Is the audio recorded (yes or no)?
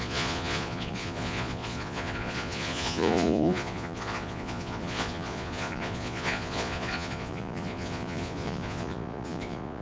no